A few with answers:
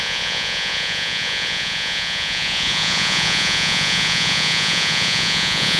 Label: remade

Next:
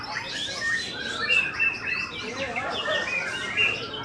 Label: recorded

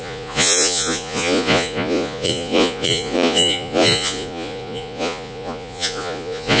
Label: remade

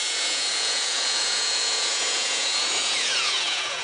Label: remade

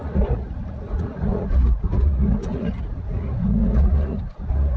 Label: remade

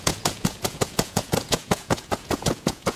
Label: remade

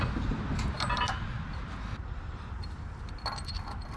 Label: recorded